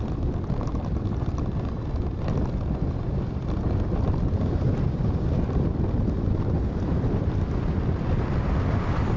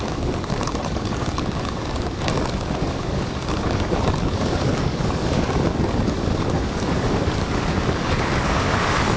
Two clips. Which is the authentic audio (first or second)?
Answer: first